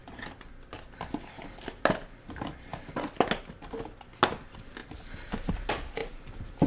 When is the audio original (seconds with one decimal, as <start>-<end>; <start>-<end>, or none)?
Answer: 0.0-6.7